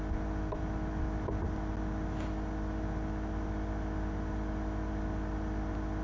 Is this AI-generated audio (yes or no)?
no